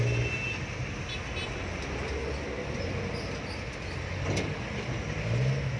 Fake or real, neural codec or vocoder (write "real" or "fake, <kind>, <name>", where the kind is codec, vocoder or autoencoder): real